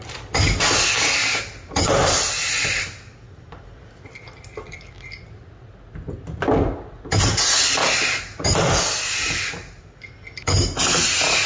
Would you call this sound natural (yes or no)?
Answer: yes